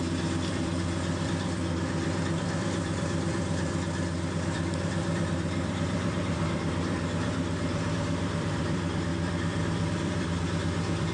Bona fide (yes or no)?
no